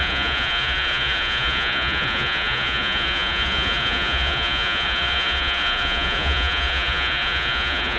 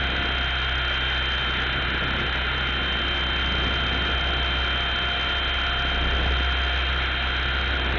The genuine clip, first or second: second